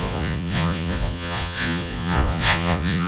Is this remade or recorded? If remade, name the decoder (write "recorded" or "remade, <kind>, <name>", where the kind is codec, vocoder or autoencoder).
remade, vocoder, Vocos